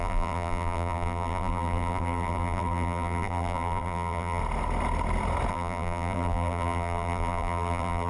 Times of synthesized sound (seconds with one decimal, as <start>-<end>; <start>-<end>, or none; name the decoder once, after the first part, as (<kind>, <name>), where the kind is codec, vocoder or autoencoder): 0.0-4.4 (vocoder, BigVGAN v2); 5.5-8.1